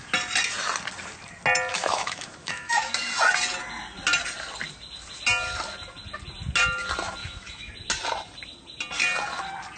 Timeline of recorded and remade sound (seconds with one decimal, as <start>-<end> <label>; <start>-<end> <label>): 0.0-1.7 recorded; 1.7-2.9 remade; 2.9-7.2 recorded; 7.2-7.7 remade; 7.7-9.8 recorded